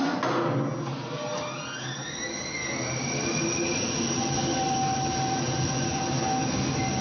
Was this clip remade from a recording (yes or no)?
no